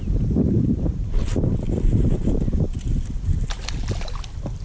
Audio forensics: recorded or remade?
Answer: recorded